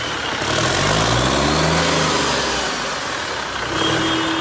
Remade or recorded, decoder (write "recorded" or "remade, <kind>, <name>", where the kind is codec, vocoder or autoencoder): recorded